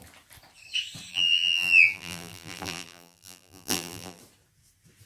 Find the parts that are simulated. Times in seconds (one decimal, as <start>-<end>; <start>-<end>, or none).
1.1-4.2